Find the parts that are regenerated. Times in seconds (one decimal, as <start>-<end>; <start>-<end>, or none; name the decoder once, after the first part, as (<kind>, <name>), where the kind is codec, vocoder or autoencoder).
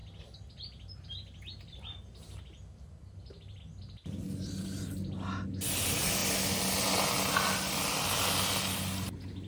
none